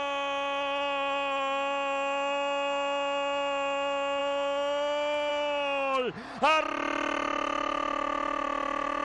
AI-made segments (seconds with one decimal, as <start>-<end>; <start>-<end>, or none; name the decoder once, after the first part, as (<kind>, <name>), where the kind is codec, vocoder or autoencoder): none